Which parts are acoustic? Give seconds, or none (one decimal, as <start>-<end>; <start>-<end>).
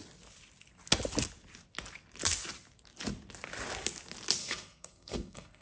0.0-4.4